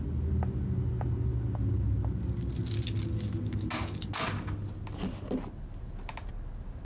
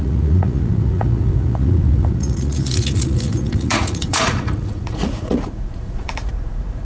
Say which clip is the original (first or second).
first